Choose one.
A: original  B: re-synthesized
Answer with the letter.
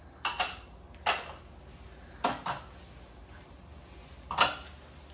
A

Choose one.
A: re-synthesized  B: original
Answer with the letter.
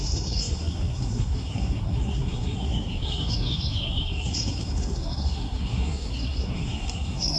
A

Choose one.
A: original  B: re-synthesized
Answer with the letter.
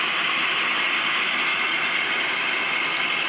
A